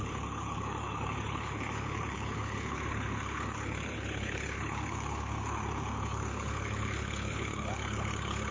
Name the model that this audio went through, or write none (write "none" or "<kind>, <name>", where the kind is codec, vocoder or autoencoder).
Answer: codec, HILCodec